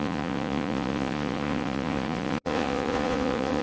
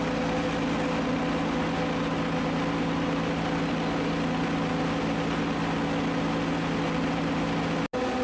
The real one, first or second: second